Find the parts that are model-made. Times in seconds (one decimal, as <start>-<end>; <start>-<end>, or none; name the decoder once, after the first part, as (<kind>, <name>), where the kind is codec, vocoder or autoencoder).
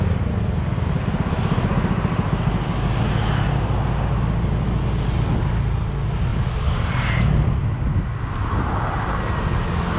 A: 6.3-7.2 (vocoder, BigVGAN v2)